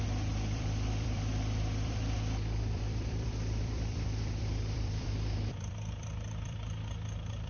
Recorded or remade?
remade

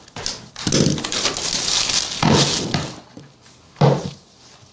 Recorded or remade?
recorded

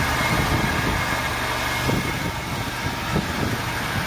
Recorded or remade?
recorded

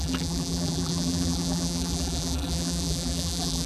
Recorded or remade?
remade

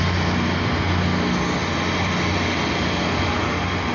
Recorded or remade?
recorded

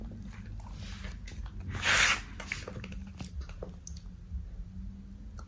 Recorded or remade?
recorded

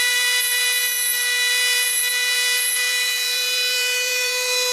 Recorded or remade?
remade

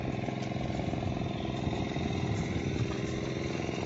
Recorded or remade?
recorded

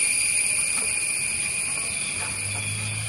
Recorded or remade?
remade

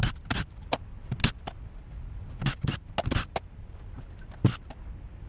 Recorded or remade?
recorded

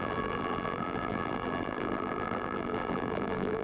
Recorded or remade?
remade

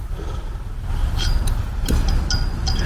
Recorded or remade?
recorded